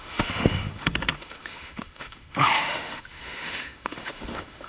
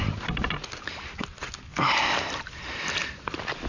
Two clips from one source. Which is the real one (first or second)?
second